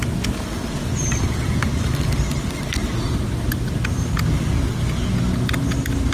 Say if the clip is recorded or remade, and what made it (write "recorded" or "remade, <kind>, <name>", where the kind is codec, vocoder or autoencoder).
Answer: recorded